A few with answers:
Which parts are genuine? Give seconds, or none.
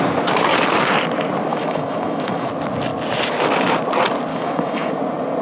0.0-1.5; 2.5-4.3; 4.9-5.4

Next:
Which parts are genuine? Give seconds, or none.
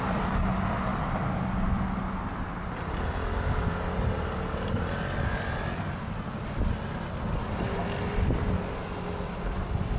0.0-10.0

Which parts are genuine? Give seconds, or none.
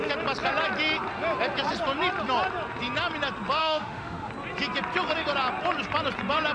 0.0-3.6; 4.3-6.5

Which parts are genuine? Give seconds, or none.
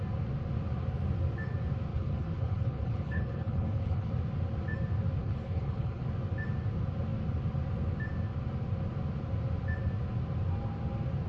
0.0-1.9; 4.1-5.2; 6.0-11.3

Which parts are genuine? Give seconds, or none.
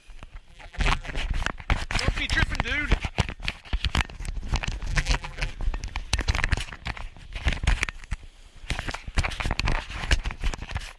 0.0-0.5; 1.1-4.9; 5.5-11.0